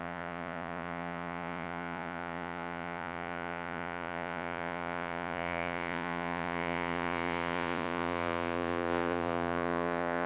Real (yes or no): no